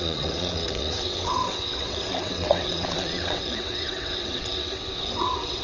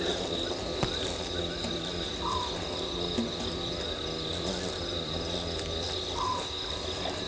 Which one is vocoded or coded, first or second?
first